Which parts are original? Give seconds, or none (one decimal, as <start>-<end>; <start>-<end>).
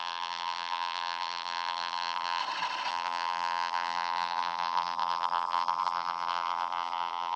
2.4-2.9